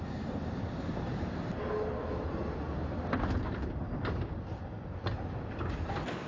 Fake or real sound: fake